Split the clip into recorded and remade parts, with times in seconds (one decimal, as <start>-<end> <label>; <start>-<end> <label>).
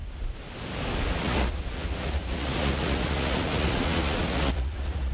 0.0-1.1 recorded; 1.1-5.1 remade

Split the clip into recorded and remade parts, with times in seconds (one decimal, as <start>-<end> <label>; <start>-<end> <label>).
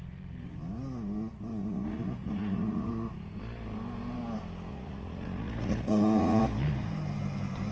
0.0-1.5 recorded; 1.5-2.9 remade; 2.9-4.7 recorded; 4.7-6.4 remade; 6.4-7.7 recorded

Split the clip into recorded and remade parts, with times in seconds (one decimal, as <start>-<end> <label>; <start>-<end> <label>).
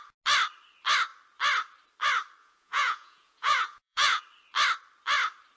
0.0-2.4 recorded; 2.4-4.2 remade; 4.2-5.6 recorded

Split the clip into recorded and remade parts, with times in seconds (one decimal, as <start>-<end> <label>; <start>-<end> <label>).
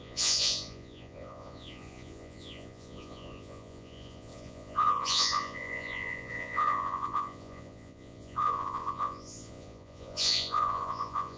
0.0-11.4 remade